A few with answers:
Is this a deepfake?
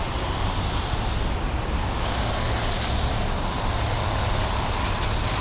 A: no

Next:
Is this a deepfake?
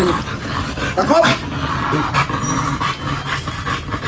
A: no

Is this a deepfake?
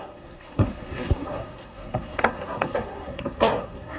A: yes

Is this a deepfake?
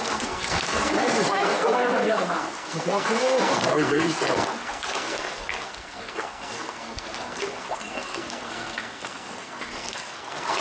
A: yes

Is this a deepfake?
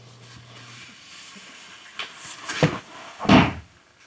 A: no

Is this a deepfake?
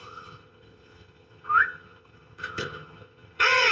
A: yes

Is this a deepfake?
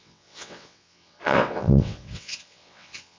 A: yes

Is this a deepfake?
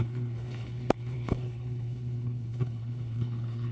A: yes